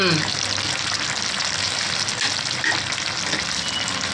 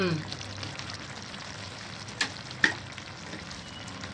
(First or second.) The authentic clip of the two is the first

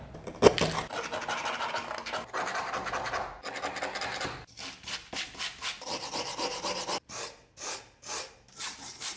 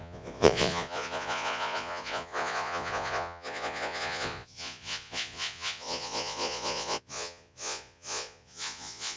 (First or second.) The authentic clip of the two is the first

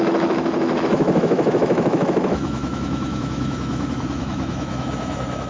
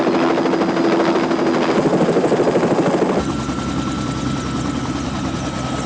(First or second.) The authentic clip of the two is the second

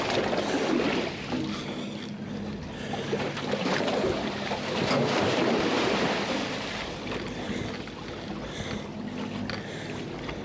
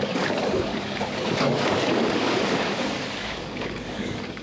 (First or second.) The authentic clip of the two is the first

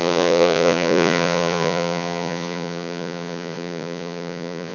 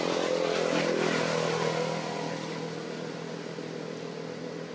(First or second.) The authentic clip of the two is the second